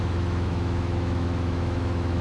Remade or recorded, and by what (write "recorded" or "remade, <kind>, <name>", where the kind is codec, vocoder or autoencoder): remade, autoencoder, DAC-VAE